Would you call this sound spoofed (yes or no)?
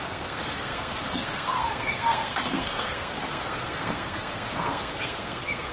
yes